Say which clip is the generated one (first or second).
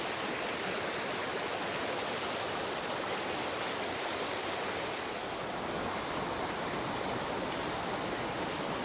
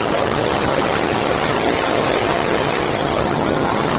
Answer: second